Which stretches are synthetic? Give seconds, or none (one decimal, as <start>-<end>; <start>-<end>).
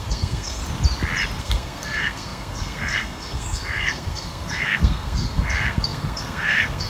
0.0-0.6; 1.4-6.9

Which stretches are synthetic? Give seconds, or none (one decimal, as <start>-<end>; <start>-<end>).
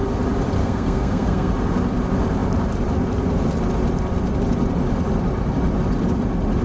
0.6-1.5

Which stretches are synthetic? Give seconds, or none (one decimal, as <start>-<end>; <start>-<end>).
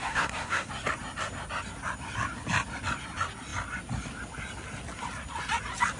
0.0-0.7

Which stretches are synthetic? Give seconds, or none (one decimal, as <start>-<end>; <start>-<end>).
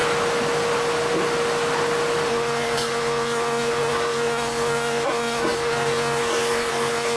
2.3-7.2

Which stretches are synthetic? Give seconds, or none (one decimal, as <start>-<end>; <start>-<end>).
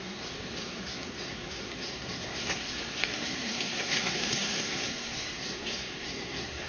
0.0-6.7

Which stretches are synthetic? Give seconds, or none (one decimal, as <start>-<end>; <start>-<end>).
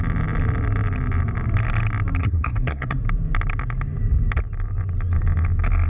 2.2-3.0